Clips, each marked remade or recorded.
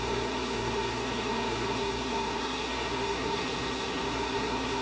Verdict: remade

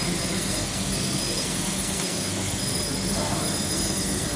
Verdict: remade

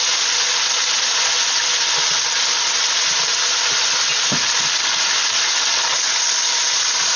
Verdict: recorded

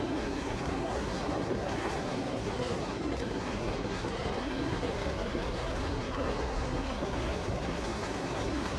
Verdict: remade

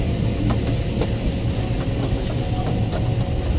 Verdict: recorded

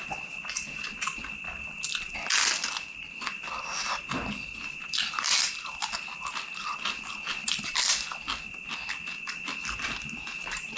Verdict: recorded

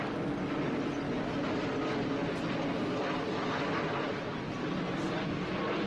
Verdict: recorded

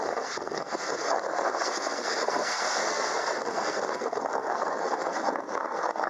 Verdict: remade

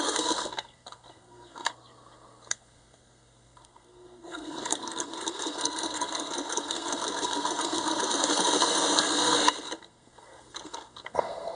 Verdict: remade